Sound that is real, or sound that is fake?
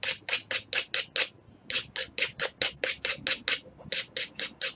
real